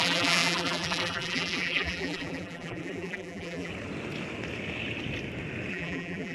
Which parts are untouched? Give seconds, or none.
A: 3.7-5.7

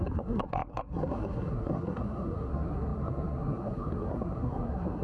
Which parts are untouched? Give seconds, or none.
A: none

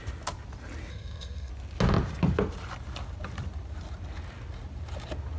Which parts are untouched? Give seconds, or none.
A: 0.0-0.9; 1.5-5.4

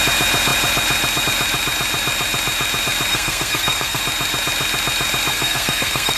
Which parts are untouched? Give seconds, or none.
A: 0.0-3.1; 4.0-5.3

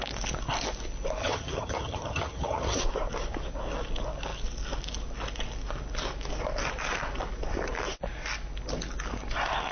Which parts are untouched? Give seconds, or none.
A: 0.0-1.2; 2.8-9.7

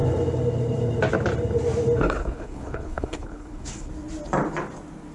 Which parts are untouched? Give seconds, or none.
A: 0.0-2.2; 3.9-5.1

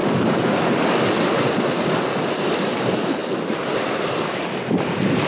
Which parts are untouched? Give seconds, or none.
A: 0.0-5.3

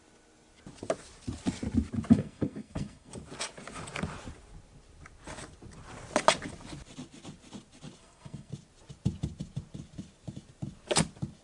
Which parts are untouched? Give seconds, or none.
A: 0.0-2.1; 3.1-8.0; 8.5-11.4